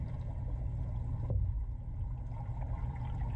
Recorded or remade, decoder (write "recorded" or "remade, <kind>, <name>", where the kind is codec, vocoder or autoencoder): recorded